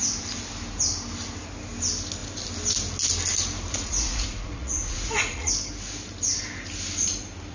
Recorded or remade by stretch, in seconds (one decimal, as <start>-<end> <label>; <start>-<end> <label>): 0.0-3.7 recorded; 3.7-5.5 remade; 5.5-7.5 recorded